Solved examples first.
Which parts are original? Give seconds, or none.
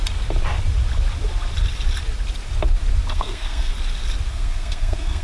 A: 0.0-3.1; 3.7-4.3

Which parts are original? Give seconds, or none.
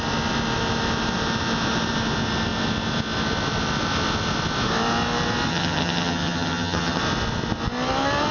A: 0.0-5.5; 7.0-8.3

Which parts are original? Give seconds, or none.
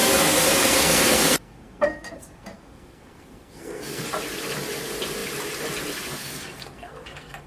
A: 4.0-6.2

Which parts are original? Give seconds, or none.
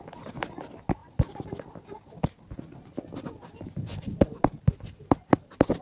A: 0.0-5.8